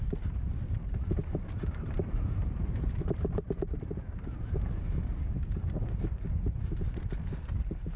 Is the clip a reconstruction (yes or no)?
yes